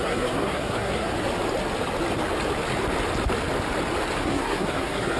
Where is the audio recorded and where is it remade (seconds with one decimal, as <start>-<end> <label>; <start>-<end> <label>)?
0.0-1.1 remade; 1.1-4.2 recorded; 4.2-5.2 remade